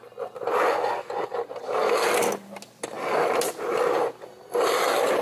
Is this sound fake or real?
real